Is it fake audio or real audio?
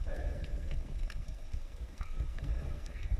fake